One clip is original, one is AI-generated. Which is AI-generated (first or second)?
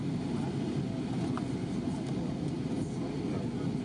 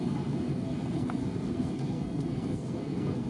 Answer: second